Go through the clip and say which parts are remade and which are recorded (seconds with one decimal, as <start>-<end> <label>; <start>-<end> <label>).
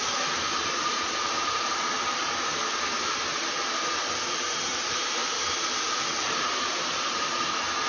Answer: 0.0-7.9 remade